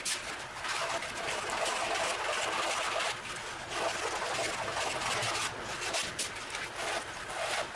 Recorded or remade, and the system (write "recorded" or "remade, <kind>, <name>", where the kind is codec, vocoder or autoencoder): recorded